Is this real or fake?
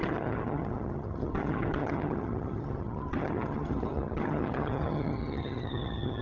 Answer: fake